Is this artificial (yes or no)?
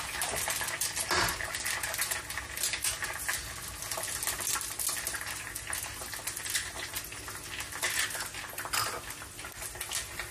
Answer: no